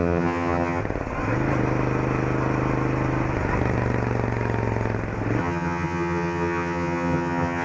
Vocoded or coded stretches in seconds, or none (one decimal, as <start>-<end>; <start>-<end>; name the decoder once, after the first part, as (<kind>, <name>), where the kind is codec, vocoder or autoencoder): 0.0-0.8 (vocoder, HiFi-GAN); 5.4-7.6